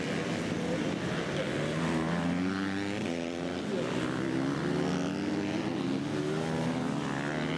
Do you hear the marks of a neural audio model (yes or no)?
no